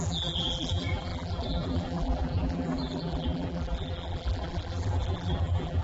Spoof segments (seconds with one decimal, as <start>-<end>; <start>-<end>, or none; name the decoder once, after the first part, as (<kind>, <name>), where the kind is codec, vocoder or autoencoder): 0.0-5.8 (vocoder, BigVGAN v2)